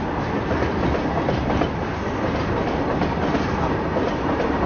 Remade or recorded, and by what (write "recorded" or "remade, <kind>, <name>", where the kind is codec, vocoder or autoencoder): recorded